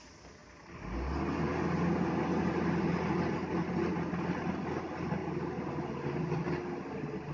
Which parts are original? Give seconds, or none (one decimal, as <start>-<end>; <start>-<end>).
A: 0.0-7.3

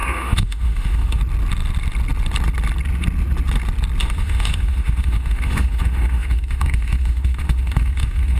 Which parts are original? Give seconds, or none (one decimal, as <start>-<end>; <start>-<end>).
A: 1.2-4.0

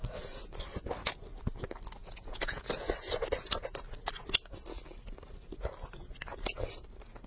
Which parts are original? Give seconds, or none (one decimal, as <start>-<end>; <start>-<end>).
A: 0.0-2.0; 2.6-7.3

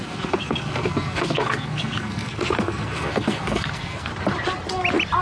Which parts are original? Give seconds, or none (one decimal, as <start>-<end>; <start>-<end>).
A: 4.1-5.2

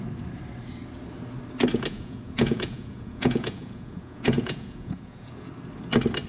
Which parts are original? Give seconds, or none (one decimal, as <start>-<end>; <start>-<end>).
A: 0.0-1.7; 5.5-6.3

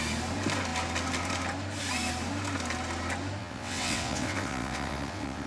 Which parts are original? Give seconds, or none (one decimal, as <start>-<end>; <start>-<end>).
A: 0.0-3.4

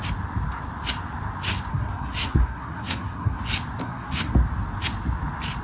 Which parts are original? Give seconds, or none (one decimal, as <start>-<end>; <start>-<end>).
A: 0.0-1.7; 3.4-3.8; 4.3-5.6

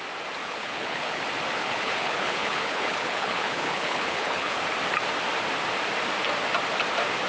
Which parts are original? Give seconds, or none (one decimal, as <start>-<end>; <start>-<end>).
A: 0.0-0.4; 1.2-1.6; 4.6-7.3